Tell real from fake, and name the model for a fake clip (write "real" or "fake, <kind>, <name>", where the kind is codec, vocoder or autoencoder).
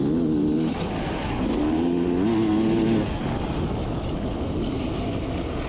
real